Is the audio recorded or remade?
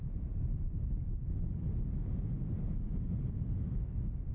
recorded